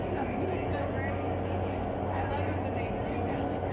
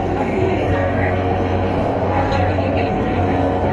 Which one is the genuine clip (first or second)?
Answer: first